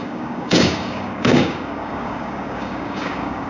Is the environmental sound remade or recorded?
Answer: remade